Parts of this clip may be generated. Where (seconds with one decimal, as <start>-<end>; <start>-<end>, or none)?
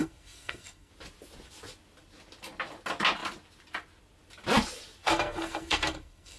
0.0-0.9; 5.0-6.4